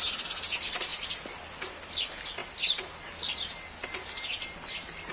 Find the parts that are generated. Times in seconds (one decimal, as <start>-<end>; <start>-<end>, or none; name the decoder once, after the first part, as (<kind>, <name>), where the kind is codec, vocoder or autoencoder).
none